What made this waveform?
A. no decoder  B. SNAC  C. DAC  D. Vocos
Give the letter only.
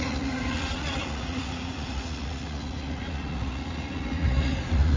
D